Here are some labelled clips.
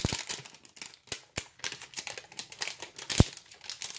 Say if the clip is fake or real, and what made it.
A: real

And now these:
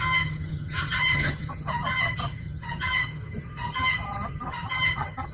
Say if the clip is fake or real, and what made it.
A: fake, vocoder, HiFi-GAN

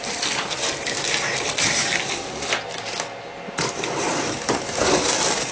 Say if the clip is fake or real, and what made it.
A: real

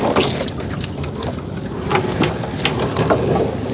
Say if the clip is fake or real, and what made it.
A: real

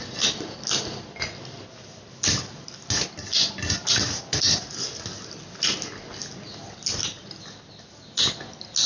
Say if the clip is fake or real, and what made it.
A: real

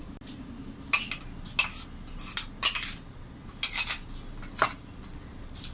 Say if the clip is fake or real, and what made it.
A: real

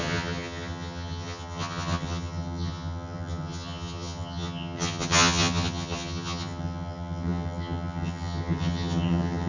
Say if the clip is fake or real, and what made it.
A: fake, vocoder, HiFi-GAN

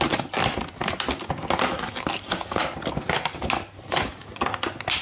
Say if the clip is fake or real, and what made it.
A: real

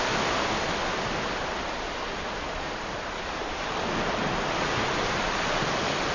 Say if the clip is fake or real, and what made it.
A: real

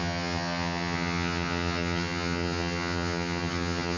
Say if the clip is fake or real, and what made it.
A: fake, vocoder, HiFi-GAN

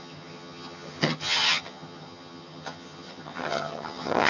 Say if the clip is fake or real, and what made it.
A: fake, vocoder, HiFi-GAN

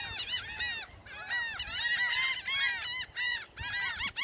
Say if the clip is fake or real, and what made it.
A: real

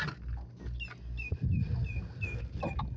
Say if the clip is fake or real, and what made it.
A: real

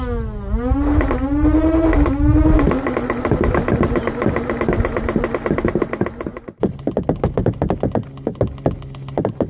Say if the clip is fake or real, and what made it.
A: real